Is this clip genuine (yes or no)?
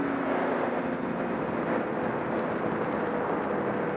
yes